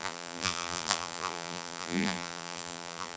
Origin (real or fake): fake